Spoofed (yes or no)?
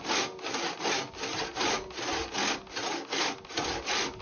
no